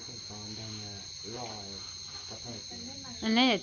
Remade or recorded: recorded